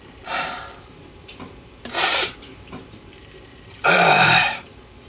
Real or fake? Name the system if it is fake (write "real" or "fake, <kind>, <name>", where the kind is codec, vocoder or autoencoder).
fake, vocoder, BigVGAN v2